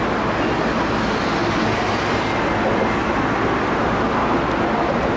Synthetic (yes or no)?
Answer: no